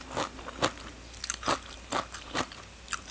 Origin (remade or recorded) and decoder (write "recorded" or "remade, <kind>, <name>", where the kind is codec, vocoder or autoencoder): recorded